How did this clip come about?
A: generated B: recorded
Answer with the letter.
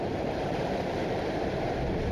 A